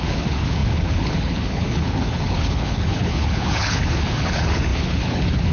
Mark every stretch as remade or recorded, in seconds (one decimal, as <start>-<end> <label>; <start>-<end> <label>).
0.0-5.5 remade